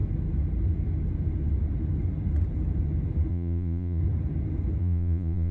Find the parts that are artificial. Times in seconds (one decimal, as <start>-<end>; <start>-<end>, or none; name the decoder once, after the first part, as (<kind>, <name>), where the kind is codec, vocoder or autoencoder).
3.3-4.0 (vocoder, Vocos); 4.8-5.5

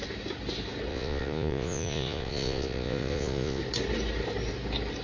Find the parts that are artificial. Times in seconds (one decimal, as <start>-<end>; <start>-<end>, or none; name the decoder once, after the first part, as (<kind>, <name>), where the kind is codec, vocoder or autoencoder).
0.9-3.6 (vocoder, Vocos)

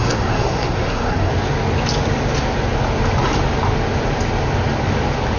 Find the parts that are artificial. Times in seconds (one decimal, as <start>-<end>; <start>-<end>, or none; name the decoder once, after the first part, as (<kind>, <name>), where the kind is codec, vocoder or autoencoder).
0.0-1.3 (codec, SNAC)

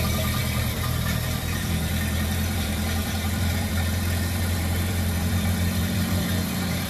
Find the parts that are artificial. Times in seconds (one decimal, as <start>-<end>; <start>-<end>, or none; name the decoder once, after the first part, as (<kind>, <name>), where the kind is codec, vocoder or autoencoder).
0.0-6.9 (vocoder, BigVGAN v2)

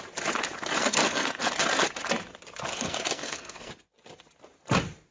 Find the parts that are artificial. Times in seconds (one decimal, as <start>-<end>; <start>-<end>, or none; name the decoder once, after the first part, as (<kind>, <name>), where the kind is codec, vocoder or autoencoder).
0.8-1.5 (codec, SNAC); 2.7-3.7

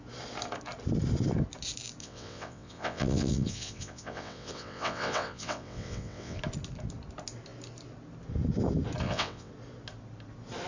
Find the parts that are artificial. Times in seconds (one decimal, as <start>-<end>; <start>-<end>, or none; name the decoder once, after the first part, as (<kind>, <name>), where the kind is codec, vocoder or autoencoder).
2.0-6.4 (vocoder, WaveNeXt); 9.0-9.5

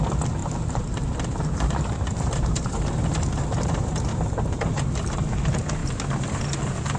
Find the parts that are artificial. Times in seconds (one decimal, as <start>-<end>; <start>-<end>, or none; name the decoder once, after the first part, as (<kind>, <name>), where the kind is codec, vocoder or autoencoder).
0.4-4.6 (vocoder, BigVGAN v2)

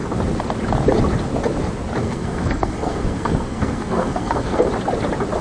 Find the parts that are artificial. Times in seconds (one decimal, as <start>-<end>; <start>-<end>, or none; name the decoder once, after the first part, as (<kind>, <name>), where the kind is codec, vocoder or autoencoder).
2.0-4.7 (codec, SNAC)